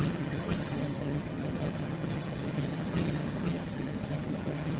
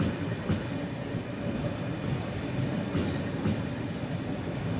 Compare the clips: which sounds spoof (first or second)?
first